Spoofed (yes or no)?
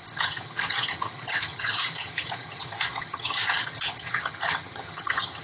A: yes